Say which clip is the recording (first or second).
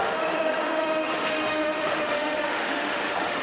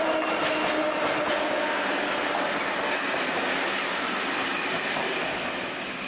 second